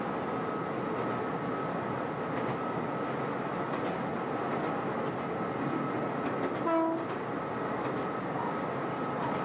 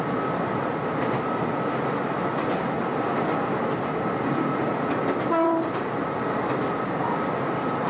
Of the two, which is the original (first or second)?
first